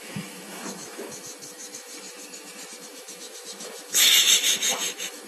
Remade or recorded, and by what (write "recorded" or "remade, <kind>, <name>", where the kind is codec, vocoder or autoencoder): remade, autoencoder, DAC-VAE